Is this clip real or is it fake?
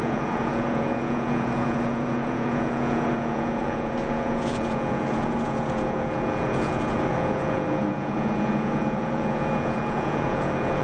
fake